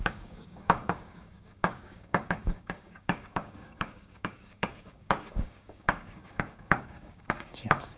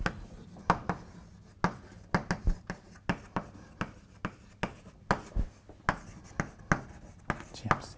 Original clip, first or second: second